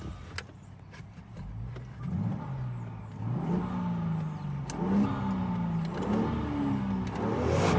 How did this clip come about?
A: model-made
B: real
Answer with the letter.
B